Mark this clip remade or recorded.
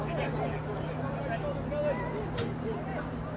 recorded